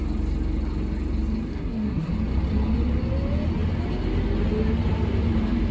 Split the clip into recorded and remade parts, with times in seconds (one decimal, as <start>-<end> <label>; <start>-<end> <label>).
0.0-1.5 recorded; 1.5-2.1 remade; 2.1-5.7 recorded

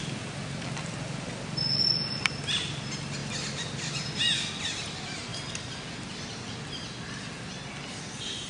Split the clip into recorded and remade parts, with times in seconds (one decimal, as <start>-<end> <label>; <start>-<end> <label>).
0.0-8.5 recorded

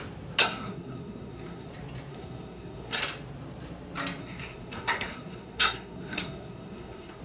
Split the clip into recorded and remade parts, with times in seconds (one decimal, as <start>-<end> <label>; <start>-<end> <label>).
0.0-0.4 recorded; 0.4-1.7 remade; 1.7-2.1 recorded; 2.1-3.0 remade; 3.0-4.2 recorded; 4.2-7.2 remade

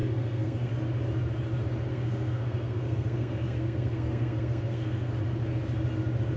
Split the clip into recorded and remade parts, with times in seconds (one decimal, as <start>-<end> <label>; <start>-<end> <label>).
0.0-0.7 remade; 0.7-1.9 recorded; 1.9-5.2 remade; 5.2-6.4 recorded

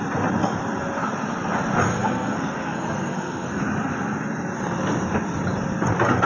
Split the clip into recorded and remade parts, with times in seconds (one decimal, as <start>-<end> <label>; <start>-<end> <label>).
0.0-1.9 recorded; 1.9-3.6 remade; 3.6-6.2 recorded